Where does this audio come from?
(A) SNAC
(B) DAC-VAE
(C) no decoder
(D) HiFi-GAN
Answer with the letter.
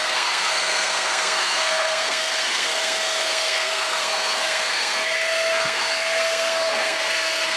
A